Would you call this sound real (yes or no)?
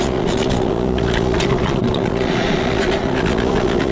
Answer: no